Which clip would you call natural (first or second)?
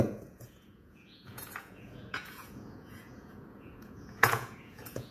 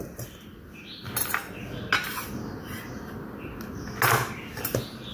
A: second